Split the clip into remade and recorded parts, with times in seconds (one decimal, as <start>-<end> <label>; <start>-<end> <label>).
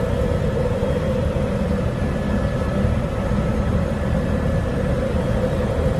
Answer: 0.0-6.0 recorded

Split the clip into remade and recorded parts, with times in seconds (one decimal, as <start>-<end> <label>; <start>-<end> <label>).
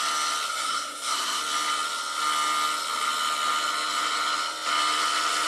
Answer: 0.0-0.5 recorded; 0.5-1.4 remade; 1.4-5.5 recorded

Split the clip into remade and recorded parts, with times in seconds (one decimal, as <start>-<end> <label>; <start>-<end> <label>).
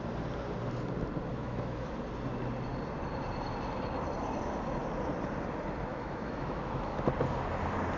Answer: 0.0-1.3 recorded; 1.3-2.0 remade; 2.0-5.9 recorded; 5.9-7.1 remade; 7.1-8.0 recorded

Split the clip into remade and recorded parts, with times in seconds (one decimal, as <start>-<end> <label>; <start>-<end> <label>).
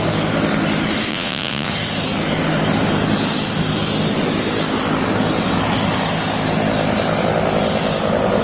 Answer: 0.0-1.1 recorded; 1.1-1.7 remade; 1.7-8.4 recorded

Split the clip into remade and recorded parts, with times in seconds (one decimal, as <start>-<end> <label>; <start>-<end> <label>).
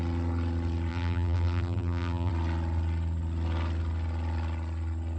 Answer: 0.0-0.9 recorded; 0.9-2.3 remade; 2.3-5.2 recorded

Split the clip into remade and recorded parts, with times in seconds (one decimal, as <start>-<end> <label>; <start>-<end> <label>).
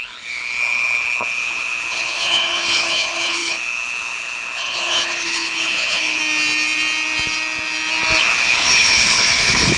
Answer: 0.0-6.2 remade; 6.2-8.2 recorded; 8.2-9.8 remade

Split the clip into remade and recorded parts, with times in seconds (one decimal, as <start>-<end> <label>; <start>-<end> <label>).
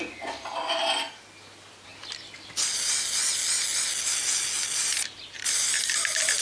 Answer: 0.0-6.4 recorded